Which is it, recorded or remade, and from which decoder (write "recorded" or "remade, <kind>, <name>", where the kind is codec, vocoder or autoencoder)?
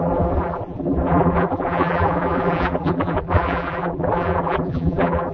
remade, vocoder, BigVGAN v2